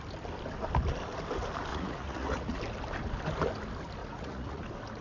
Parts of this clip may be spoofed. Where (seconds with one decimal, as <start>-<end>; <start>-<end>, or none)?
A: 1.7-2.6; 4.0-4.6